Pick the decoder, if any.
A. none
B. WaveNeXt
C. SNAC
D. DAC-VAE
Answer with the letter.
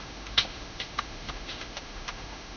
D